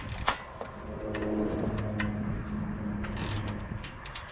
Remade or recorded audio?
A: recorded